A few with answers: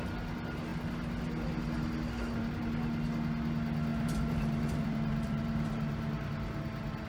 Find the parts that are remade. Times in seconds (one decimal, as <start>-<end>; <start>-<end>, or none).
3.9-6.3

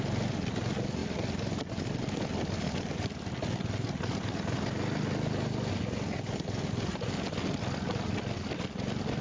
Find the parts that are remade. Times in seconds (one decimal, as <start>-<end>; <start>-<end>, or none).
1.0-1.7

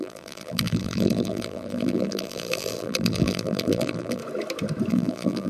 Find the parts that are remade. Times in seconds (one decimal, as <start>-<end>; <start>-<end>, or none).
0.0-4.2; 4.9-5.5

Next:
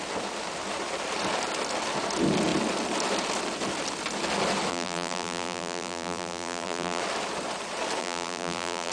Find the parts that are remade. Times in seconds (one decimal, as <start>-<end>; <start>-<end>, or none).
4.7-7.0; 8.0-8.9

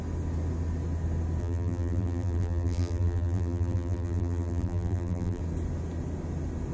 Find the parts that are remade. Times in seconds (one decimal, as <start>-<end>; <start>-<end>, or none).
1.4-5.4

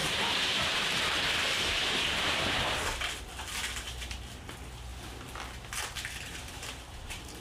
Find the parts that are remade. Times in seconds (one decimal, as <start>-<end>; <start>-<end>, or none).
0.0-2.8; 6.3-7.4

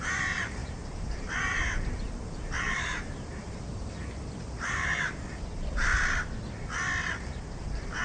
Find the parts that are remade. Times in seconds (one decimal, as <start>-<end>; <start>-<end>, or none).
0.0-5.9; 7.6-8.0